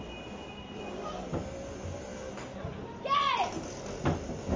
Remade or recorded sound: recorded